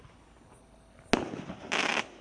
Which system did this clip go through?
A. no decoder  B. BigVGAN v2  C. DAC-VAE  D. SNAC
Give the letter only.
A